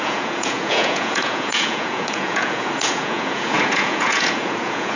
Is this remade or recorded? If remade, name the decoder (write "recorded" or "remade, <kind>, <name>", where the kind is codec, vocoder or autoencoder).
remade, vocoder, Vocos